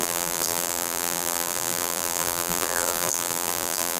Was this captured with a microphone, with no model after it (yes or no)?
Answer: no